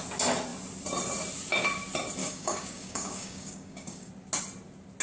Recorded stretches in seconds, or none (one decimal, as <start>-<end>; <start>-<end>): 0.0-2.2; 4.1-5.0